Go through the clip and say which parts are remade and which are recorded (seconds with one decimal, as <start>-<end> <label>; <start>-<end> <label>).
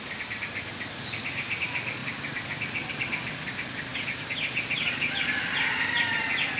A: 0.0-6.6 recorded